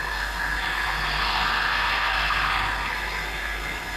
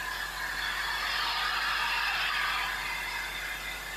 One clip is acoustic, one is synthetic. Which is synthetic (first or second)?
first